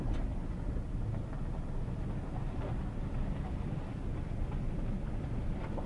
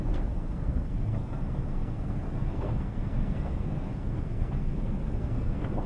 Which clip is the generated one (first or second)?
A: second